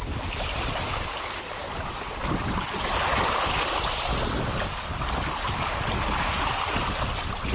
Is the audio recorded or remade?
recorded